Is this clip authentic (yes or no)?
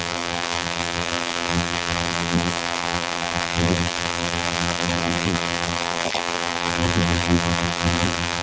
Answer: no